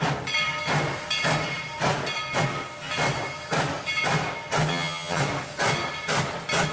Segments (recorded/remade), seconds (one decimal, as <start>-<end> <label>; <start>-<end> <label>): 0.0-4.7 recorded; 4.7-5.2 remade; 5.2-6.7 recorded